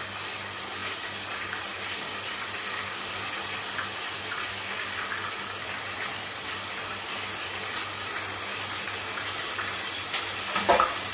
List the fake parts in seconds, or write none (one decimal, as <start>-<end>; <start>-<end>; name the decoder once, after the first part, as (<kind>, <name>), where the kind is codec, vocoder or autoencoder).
none